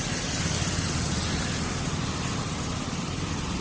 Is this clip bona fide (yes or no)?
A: yes